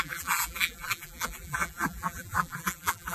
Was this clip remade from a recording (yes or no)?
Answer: yes